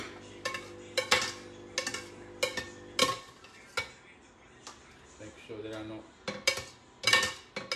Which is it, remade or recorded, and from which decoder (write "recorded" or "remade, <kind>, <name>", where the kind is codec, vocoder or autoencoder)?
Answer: recorded